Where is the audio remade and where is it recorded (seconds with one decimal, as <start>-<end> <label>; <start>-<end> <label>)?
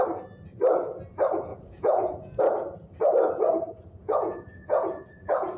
0.0-1.5 recorded; 1.5-2.4 remade; 2.4-4.0 recorded; 4.0-5.6 remade